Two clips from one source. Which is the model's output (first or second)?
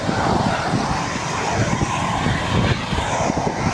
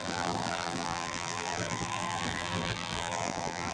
second